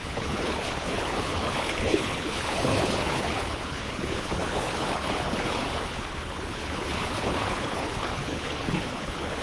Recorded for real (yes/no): no